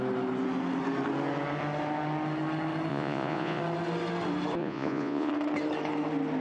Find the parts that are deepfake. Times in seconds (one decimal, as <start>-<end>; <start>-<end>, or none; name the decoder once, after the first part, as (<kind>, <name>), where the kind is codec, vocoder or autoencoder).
2.9-3.6 (vocoder, Vocos); 4.6-5.3